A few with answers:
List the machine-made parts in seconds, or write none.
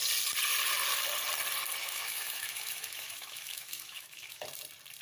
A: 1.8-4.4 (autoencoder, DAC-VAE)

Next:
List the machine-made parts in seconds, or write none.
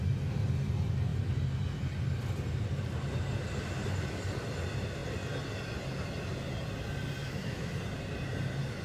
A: 7.2-7.7 (autoencoder, DAC-VAE)